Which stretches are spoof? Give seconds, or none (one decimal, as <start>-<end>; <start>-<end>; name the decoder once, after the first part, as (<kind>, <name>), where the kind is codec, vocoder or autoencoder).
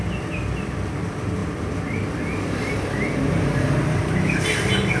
none